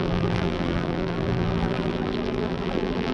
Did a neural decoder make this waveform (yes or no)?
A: yes